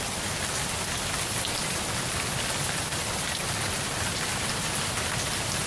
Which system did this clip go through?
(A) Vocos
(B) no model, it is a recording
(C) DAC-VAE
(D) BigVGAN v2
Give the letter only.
B